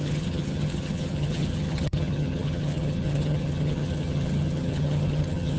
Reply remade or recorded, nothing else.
remade